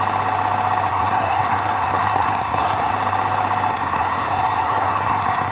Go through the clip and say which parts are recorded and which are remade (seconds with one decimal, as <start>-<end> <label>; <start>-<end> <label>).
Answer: 0.0-0.9 recorded; 0.9-2.9 remade; 2.9-3.7 recorded; 3.7-5.5 remade